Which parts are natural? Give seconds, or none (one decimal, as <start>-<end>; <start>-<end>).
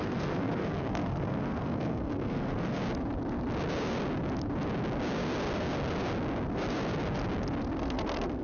2.8-7.8